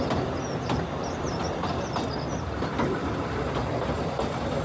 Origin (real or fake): real